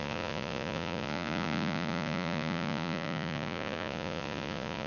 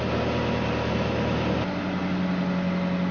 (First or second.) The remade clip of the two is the first